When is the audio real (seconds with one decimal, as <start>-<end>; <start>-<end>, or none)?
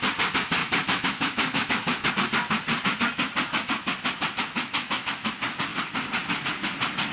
0.0-0.6; 2.1-4.4; 5.3-7.1